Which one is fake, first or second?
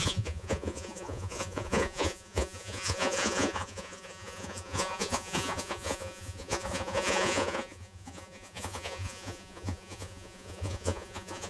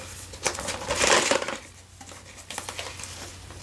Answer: first